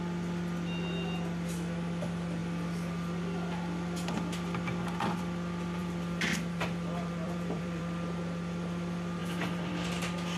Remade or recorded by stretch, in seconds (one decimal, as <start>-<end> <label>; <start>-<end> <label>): 0.0-5.8 recorded; 5.8-7.8 remade; 7.8-9.2 recorded; 9.2-9.7 remade; 9.7-10.4 recorded